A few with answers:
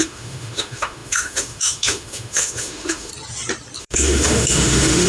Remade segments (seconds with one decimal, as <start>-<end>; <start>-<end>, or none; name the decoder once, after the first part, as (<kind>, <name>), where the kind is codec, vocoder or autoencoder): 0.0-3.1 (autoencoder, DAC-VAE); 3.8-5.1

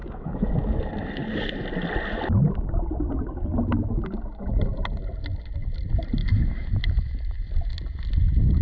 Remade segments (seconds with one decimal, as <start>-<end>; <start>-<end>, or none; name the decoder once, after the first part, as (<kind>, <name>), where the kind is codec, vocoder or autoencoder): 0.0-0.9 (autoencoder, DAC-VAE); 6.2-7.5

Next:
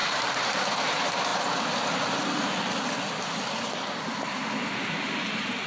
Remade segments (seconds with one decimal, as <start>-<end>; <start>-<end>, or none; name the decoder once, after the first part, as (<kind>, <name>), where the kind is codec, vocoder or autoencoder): 0.0-1.3 (vocoder, BigVGAN v2); 4.7-5.7

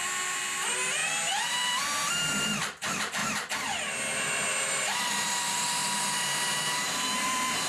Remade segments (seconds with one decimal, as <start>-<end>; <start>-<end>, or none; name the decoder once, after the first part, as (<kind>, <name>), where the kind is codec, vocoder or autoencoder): 0.0-3.2 (vocoder, BigVGAN v2); 4.5-7.7

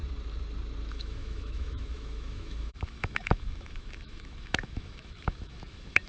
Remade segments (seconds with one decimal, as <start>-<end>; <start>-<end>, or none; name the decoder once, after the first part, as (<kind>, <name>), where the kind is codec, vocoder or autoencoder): 0.9-6.1 (autoencoder, DAC-VAE)

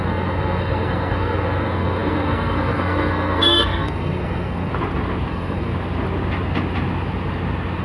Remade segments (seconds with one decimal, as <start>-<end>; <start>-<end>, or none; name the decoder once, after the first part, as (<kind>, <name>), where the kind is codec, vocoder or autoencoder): 0.0-4.7 (codec, SNAC); 5.3-5.7